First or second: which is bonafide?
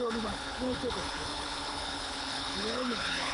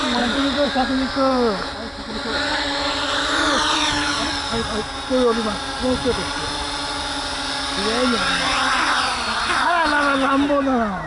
second